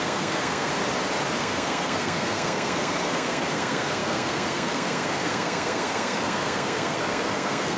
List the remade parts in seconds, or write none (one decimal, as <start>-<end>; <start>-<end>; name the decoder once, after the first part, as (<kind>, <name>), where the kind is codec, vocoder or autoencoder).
0.0-0.7 (codec, SNAC); 1.4-7.8